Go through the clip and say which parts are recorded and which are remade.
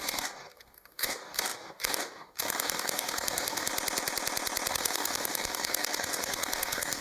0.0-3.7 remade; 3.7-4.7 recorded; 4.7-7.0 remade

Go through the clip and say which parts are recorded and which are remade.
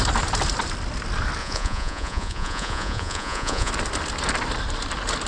0.0-1.4 recorded; 1.4-3.7 remade; 3.7-5.3 recorded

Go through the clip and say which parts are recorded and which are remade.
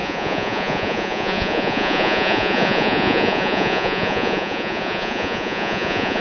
0.0-6.2 remade